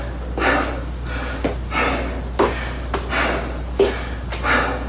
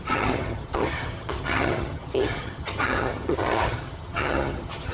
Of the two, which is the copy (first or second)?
second